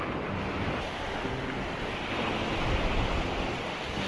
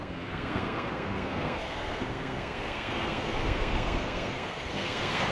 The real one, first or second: first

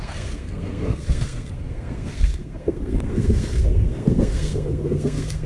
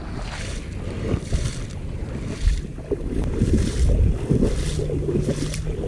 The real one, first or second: second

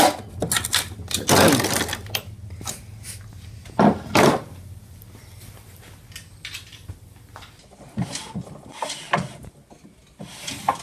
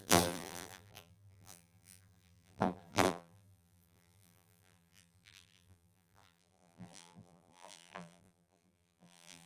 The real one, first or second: first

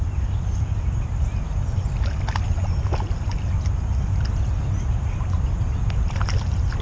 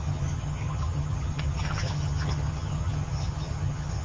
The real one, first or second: first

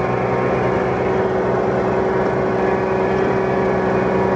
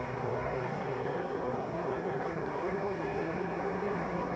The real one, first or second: first